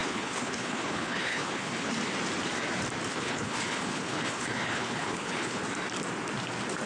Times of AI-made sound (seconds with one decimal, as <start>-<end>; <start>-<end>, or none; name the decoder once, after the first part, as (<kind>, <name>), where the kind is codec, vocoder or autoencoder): 0.0-1.9 (codec, HILCodec); 3.1-5.6